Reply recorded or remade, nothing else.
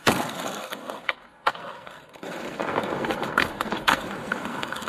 remade